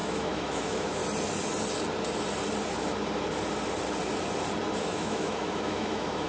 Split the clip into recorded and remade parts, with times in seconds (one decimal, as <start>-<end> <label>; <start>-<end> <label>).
0.0-1.0 remade; 1.0-4.8 recorded; 4.8-6.3 remade